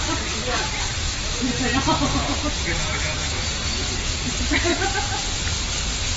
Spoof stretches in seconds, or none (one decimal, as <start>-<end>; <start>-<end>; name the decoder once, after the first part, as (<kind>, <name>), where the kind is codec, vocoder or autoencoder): 3.6-5.2 (vocoder, BigVGAN v2)